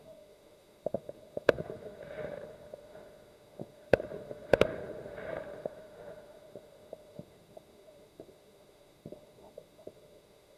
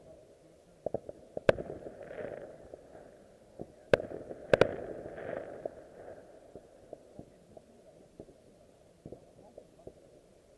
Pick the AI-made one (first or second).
first